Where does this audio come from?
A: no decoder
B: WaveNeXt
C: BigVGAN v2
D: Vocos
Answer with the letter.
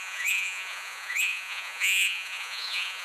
D